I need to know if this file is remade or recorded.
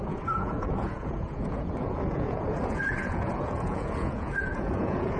remade